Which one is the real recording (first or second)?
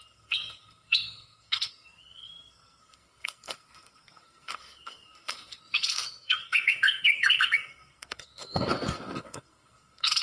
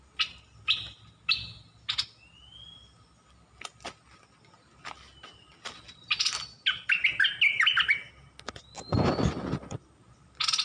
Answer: second